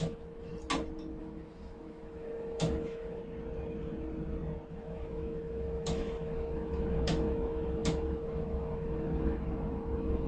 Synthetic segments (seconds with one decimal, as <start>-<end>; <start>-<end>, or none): 0.0-0.5; 1.2-3.2; 4.7-10.3